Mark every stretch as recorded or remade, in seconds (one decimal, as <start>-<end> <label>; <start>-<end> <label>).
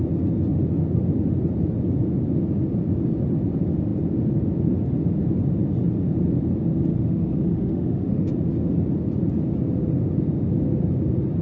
0.0-6.9 recorded; 6.9-8.3 remade; 8.3-11.4 recorded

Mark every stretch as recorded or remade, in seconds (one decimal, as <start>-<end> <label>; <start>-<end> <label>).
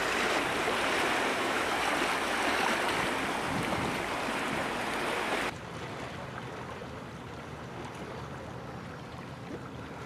0.0-1.3 recorded; 1.3-1.8 remade; 1.8-10.1 recorded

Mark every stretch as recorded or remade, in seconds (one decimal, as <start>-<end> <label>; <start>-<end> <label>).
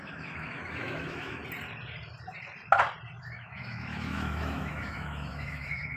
0.0-1.4 remade; 1.4-3.2 recorded; 3.2-6.0 remade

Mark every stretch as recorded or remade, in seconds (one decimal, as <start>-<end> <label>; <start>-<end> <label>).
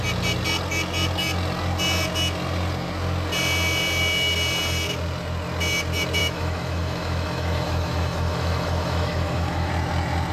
0.0-6.2 recorded; 6.2-9.7 remade; 9.7-10.3 recorded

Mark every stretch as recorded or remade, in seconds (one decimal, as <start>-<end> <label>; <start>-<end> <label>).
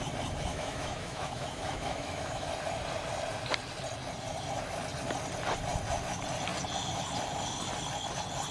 0.0-0.5 recorded; 0.5-2.5 remade; 2.5-8.5 recorded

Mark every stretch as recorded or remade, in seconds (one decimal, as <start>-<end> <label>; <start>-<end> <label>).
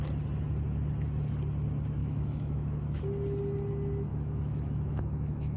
0.0-2.0 recorded; 2.0-3.0 remade; 3.0-4.1 recorded; 4.1-5.6 remade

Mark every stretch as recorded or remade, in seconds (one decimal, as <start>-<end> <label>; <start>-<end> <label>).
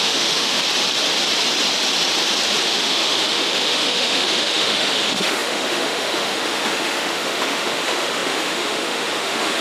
0.0-0.6 remade; 0.6-2.6 recorded; 2.6-9.6 remade